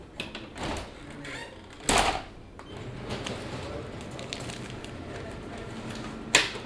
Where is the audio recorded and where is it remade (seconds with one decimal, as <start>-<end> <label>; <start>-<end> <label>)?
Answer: 0.0-6.7 recorded